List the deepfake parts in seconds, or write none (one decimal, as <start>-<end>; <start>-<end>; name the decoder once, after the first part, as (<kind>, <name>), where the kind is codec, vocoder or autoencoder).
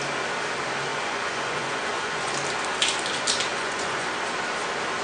0.9-2.3 (vocoder, Vocos); 3.5-4.1